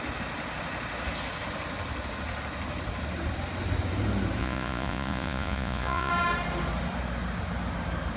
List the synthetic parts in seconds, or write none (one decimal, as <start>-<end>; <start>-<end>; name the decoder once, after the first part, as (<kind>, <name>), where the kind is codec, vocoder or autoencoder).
4.4-6.1 (vocoder, Vocos)